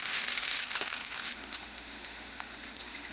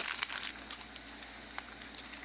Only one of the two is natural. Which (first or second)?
second